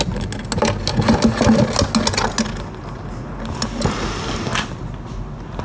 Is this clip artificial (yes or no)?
no